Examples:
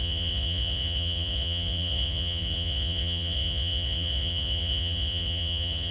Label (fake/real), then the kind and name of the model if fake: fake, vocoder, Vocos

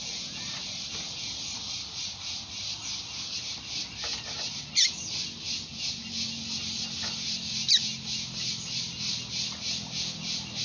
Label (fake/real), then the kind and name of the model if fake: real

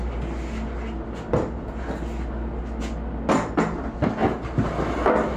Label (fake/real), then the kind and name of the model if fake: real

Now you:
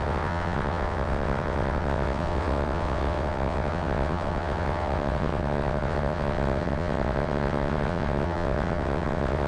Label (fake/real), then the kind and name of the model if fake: fake, vocoder, WaveNeXt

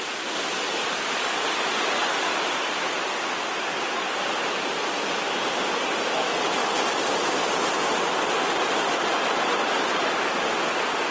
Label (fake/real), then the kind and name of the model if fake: real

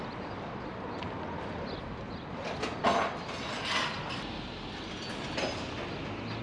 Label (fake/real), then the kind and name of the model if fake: real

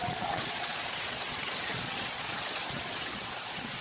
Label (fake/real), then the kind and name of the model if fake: fake, vocoder, Vocos